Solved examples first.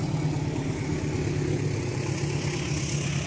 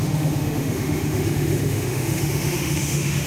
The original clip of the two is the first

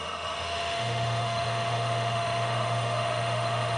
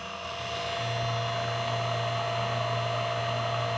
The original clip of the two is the second